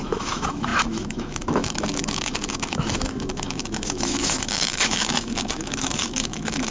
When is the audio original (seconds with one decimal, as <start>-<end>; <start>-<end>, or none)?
none